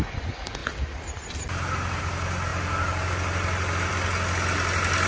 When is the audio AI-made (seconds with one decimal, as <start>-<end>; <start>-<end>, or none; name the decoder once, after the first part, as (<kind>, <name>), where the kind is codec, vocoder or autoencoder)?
none

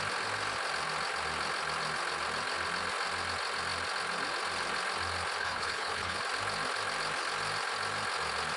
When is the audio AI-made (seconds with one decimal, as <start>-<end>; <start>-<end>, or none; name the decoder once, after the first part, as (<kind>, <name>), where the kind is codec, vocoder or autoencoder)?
5.4-6.2 (codec, HILCodec)

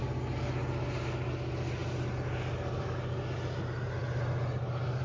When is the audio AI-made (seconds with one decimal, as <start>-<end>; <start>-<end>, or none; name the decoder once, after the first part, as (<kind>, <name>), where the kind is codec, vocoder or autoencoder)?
none

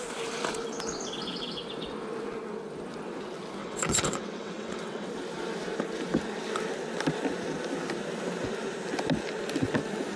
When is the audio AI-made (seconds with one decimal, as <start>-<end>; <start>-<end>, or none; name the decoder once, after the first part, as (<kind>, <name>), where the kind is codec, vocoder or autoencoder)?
3.6-5.1 (vocoder, WaveNeXt)